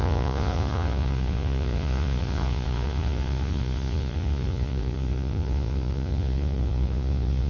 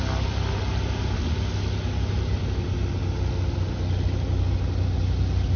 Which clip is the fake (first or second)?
first